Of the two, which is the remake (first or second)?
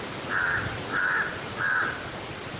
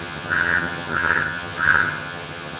second